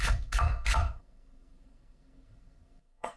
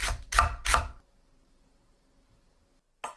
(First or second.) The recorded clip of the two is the second